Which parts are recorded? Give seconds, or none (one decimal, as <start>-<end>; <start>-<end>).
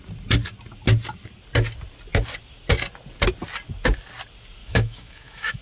0.0-4.6